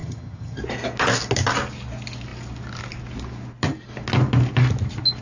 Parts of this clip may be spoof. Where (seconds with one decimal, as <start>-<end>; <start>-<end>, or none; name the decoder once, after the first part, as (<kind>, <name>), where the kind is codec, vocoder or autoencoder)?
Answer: 0.0-0.6 (vocoder, HiFi-GAN)